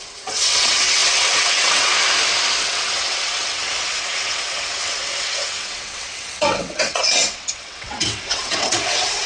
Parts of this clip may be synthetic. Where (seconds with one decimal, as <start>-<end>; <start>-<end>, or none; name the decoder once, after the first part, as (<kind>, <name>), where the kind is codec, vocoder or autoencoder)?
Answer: 0.0-1.9 (vocoder, WaveNeXt); 2.6-9.3